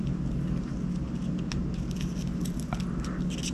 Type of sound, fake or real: real